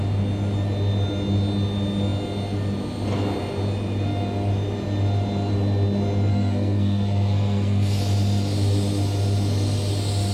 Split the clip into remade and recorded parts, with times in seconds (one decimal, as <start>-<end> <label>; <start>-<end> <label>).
0.0-6.3 recorded; 6.3-8.0 remade; 8.0-10.3 recorded